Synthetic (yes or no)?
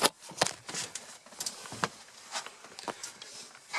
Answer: no